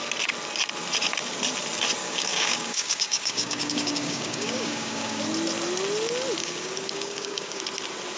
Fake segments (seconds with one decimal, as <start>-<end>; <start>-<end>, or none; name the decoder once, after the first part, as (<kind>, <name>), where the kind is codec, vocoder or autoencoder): 2.0-5.2 (codec, DAC); 6.4-7.6